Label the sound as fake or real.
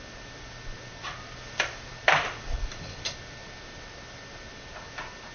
real